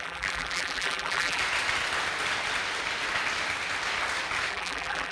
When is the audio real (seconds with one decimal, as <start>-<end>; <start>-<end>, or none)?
1.4-4.5